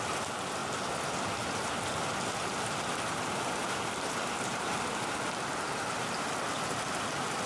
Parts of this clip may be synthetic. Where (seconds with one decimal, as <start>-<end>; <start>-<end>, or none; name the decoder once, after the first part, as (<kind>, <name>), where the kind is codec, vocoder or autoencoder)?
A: none